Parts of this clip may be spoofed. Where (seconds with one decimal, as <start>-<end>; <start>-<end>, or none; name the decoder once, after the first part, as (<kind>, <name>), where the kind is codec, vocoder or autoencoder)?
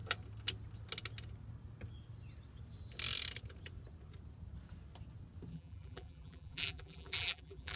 5.5-7.8 (vocoder, BigVGAN v2)